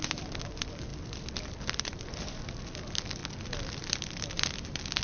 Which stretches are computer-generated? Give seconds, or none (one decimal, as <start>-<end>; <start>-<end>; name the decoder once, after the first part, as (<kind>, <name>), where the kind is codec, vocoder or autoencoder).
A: none